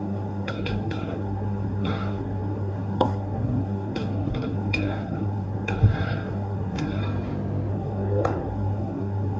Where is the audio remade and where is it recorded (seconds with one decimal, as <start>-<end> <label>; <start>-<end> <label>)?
0.0-7.0 remade; 7.0-7.7 recorded; 7.7-9.4 remade